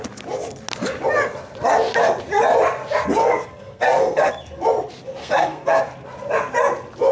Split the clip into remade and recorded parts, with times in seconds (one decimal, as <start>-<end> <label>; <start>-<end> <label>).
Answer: 0.0-3.2 recorded; 3.2-4.3 remade; 4.3-5.2 recorded; 5.2-5.8 remade; 5.8-7.1 recorded